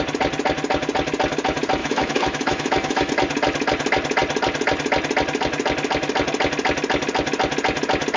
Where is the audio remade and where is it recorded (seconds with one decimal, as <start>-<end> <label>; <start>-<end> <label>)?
0.0-1.8 recorded; 1.8-3.1 remade; 3.1-8.2 recorded